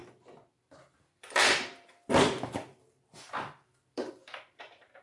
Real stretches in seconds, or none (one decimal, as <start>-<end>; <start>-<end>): none